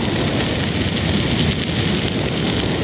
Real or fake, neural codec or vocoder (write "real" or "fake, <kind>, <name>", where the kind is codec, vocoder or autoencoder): real